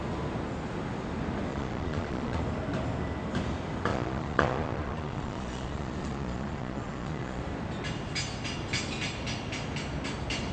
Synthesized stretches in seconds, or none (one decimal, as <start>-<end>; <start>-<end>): 1.5-2.4; 3.9-7.4